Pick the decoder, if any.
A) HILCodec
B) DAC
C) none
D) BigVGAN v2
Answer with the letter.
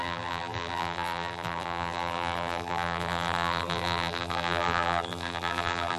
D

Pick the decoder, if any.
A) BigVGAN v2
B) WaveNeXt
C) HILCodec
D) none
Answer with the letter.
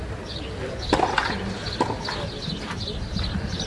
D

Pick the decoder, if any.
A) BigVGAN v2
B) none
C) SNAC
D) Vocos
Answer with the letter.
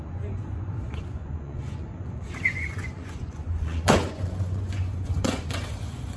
D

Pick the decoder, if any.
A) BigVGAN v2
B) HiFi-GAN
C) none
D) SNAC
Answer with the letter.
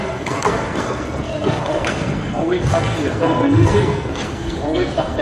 D